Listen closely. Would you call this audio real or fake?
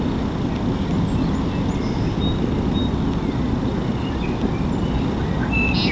real